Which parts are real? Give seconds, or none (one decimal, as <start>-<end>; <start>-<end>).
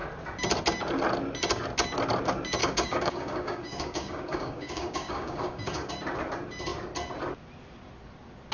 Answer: 0.0-2.6; 5.9-8.5